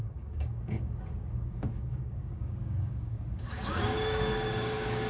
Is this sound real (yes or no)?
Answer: no